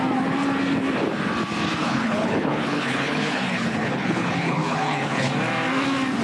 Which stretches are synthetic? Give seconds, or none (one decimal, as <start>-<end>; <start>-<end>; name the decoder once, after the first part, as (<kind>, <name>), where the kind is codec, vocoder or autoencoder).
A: 1.8-5.3 (codec, HILCodec)